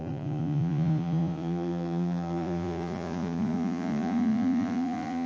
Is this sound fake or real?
fake